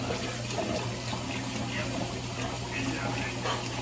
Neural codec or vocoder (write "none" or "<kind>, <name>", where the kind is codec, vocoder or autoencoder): none